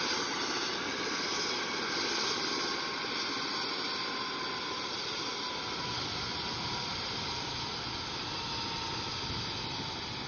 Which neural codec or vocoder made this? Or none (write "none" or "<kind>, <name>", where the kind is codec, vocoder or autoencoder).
none